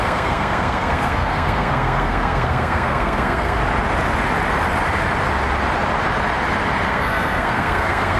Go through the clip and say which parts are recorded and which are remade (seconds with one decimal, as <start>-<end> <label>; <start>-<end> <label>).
0.0-3.6 remade; 3.6-6.9 recorded; 6.9-8.2 remade